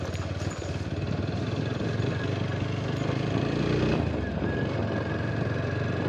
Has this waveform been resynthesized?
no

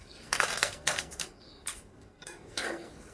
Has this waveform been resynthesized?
yes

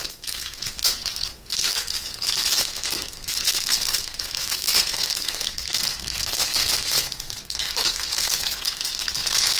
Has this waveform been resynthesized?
yes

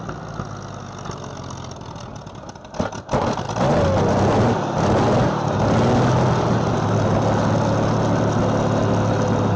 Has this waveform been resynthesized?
no